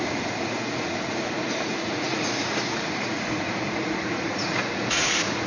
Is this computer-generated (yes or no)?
yes